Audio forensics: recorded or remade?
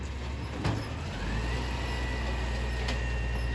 recorded